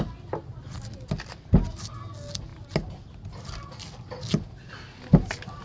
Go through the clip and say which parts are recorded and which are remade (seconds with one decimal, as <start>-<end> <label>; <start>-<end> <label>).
0.0-5.6 recorded

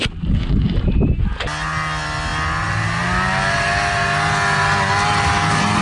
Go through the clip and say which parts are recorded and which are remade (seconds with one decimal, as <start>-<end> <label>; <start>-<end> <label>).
0.0-5.8 recorded

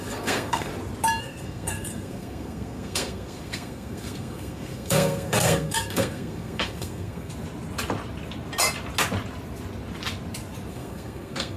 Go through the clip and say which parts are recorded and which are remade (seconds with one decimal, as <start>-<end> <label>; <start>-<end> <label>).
0.0-0.7 remade; 0.7-1.2 recorded; 1.2-7.3 remade; 7.3-10.7 recorded; 10.7-11.6 remade

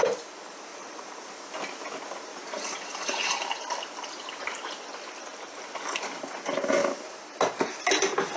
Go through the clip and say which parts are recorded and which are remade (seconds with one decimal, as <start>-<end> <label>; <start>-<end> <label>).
0.0-0.7 recorded; 0.7-1.3 remade; 1.3-2.3 recorded; 2.3-3.3 remade; 3.3-8.4 recorded

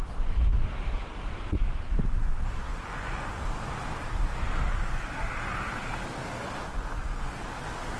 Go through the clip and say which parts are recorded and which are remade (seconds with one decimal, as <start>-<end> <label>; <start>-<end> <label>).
0.0-2.7 recorded; 2.7-3.4 remade; 3.4-6.7 recorded; 6.7-7.2 remade; 7.2-8.0 recorded

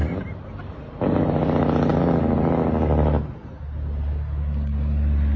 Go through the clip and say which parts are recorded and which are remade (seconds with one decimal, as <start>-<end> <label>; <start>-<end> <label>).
0.0-5.4 recorded

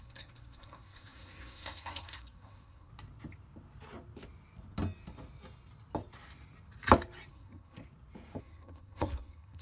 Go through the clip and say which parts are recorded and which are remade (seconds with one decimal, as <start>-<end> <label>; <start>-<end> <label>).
0.0-2.9 remade; 2.9-7.3 recorded; 7.3-7.8 remade; 7.8-8.4 recorded; 8.4-9.6 remade

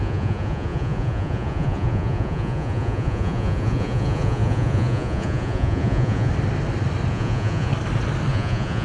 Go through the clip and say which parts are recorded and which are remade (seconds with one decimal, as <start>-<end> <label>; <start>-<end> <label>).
0.0-6.3 remade; 6.3-7.1 recorded; 7.1-7.7 remade; 7.7-8.3 recorded; 8.3-8.8 remade